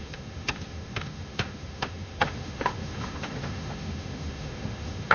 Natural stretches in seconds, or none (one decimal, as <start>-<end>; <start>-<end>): none